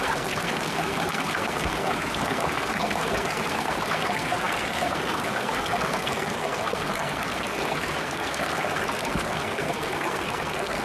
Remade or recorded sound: remade